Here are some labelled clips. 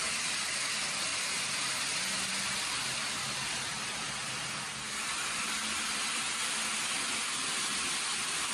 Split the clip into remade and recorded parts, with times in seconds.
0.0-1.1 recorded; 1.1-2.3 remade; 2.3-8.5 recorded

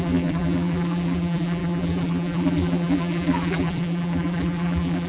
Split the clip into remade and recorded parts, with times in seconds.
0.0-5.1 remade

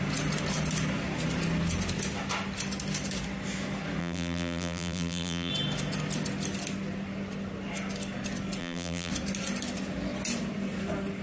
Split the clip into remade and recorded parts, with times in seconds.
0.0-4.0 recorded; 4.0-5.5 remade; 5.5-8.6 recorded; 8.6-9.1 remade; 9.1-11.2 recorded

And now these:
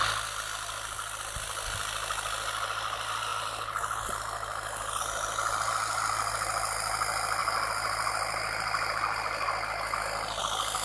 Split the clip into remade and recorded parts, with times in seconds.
0.0-10.8 remade